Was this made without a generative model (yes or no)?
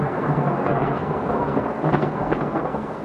no